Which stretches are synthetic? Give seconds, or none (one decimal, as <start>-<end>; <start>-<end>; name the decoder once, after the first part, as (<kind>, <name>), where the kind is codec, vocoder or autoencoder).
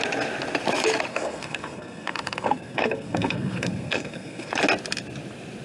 1.1-4.5 (codec, SNAC)